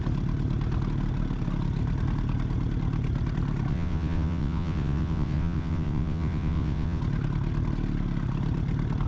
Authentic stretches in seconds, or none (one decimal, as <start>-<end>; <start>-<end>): 0.0-3.7; 7.0-9.1